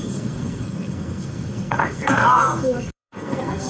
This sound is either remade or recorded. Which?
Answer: remade